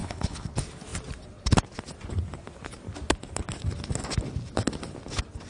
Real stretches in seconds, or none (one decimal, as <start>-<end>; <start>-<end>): 0.5-5.5